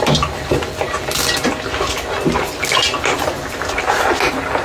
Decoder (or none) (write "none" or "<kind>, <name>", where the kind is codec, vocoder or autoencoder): none